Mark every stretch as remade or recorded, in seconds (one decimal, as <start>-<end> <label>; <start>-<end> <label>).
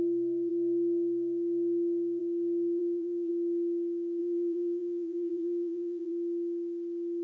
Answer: 0.0-2.8 recorded; 2.8-3.3 remade; 3.3-4.2 recorded; 4.2-6.1 remade; 6.1-7.2 recorded